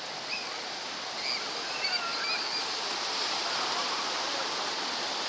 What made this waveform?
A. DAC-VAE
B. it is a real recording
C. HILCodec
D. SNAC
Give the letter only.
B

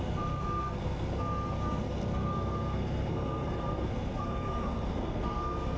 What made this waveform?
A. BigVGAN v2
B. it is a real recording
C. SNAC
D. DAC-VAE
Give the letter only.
C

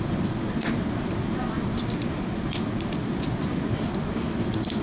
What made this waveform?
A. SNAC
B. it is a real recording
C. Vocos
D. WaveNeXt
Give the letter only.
B